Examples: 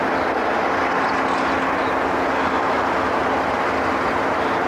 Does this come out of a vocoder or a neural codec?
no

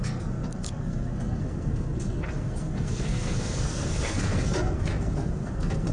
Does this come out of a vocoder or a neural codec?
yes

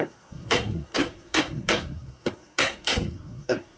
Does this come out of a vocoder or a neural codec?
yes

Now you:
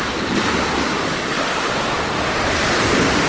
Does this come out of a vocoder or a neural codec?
no